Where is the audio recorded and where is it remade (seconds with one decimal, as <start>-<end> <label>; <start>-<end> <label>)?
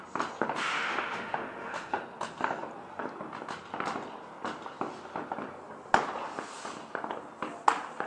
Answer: 0.0-0.7 recorded; 0.7-2.0 remade; 2.0-8.1 recorded